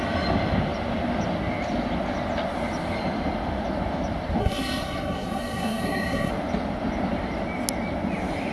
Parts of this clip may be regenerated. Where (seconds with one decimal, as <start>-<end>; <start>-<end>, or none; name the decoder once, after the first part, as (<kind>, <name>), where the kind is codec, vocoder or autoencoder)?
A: 4.4-6.3 (codec, SNAC)